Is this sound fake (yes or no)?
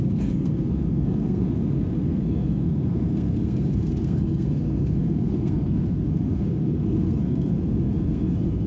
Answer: yes